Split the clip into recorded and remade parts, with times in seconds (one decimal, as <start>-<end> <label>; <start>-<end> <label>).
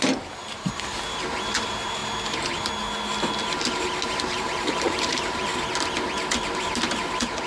0.0-0.9 remade; 0.9-1.5 recorded; 1.5-2.0 remade; 2.0-4.4 recorded; 4.4-5.5 remade; 5.5-6.3 recorded; 6.3-7.5 remade